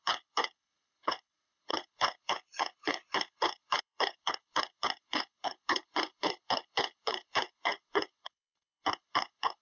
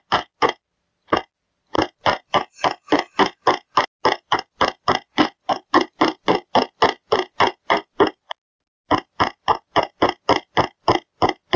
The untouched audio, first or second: second